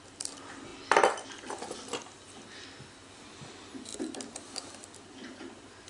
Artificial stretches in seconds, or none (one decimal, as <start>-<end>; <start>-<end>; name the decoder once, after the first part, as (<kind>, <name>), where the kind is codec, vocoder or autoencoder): none

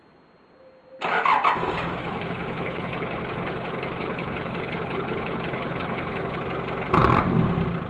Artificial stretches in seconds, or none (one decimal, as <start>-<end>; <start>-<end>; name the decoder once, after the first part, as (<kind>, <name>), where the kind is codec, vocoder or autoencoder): 2.0-6.4 (codec, HILCodec)

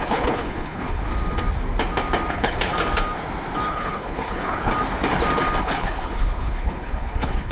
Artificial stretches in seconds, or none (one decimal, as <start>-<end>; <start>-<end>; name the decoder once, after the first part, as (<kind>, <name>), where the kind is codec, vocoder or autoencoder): 0.0-1.1 (codec, HILCodec); 2.3-2.7; 3.7-4.7; 5.6-7.5

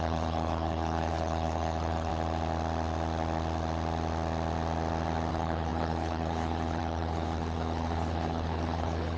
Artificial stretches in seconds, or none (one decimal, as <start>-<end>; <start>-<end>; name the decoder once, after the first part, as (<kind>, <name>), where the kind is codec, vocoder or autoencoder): 0.0-2.1 (codec, HILCodec); 5.3-9.2